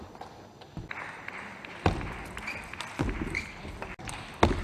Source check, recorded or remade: recorded